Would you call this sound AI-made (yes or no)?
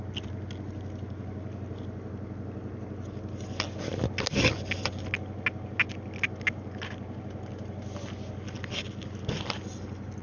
no